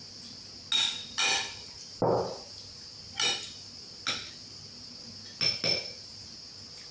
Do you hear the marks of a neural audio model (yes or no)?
no